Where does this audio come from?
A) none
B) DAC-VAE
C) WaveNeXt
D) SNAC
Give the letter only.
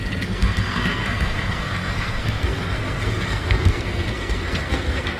D